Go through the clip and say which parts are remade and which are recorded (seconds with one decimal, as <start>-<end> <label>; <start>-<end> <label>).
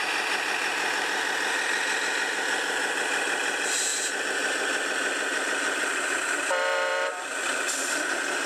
0.0-3.9 recorded; 3.9-8.1 remade; 8.1-8.5 recorded